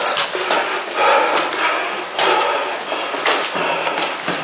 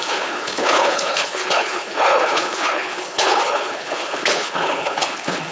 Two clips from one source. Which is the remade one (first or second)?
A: second